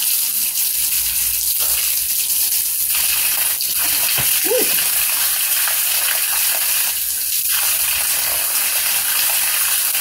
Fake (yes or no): no